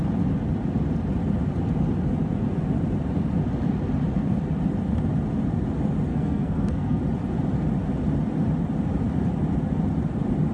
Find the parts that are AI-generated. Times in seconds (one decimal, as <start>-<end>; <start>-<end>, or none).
6.1-7.0